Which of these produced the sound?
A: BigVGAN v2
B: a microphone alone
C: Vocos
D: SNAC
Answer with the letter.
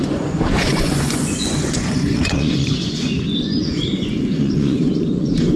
C